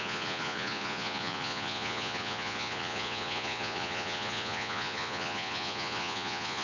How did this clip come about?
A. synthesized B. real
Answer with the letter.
A